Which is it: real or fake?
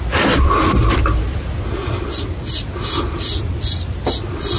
real